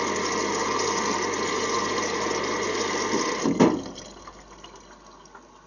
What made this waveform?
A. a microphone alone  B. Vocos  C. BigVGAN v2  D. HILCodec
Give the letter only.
A